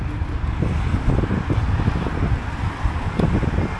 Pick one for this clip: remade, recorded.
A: recorded